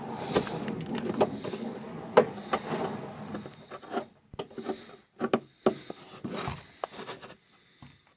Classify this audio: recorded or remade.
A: recorded